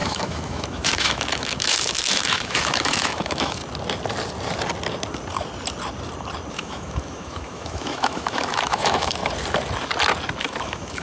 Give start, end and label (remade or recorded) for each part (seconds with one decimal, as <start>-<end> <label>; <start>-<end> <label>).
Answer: 0.0-3.6 remade; 3.6-6.5 recorded; 6.5-9.2 remade; 9.2-10.4 recorded; 10.4-11.0 remade